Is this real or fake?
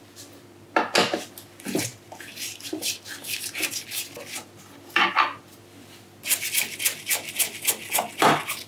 real